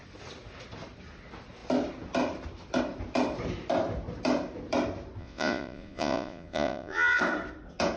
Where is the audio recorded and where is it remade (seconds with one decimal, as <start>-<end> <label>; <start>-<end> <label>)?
0.0-5.2 recorded; 5.2-7.2 remade; 7.2-8.0 recorded